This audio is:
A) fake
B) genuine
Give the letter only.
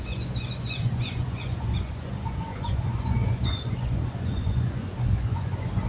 A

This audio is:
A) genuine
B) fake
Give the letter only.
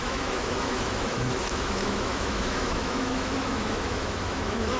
B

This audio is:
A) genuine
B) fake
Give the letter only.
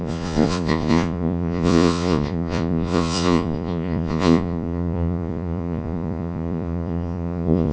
B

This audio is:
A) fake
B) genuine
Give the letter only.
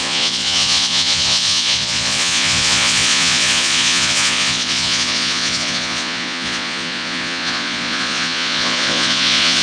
A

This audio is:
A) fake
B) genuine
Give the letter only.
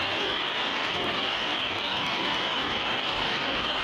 A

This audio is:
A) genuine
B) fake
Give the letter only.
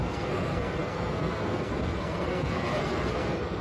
B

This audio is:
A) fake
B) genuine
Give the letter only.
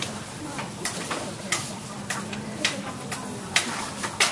A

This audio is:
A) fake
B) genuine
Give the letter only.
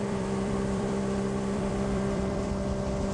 A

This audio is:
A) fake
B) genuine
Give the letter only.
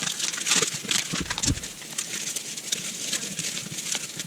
B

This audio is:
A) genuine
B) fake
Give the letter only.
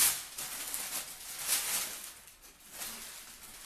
A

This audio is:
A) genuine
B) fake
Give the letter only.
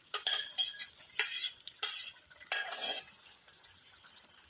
B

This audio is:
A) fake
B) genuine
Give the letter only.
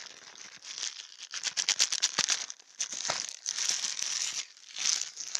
B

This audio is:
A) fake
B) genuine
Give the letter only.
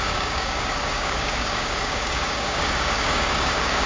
A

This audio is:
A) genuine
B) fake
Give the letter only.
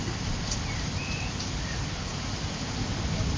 A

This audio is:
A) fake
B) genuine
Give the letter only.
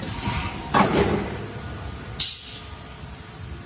B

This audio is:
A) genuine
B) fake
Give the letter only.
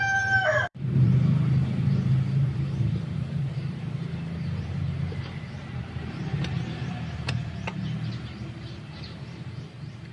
B